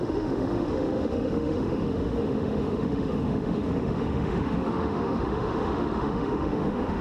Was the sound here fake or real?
fake